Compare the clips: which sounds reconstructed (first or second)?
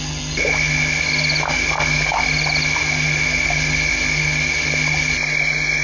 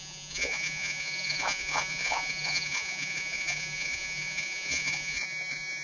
second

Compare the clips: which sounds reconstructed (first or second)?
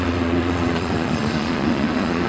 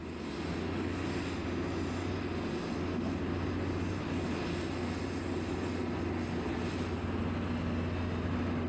first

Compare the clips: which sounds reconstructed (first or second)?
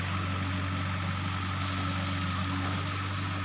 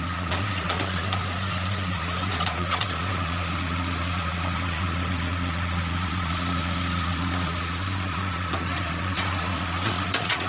second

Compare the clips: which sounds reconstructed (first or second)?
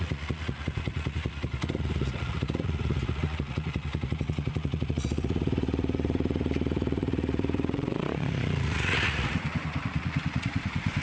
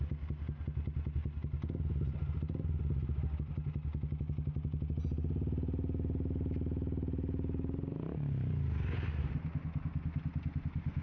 first